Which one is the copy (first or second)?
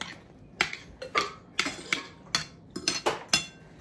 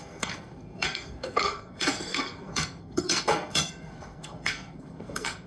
second